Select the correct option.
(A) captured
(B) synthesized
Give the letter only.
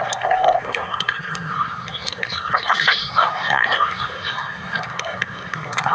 B